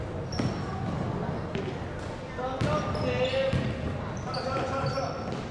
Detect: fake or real real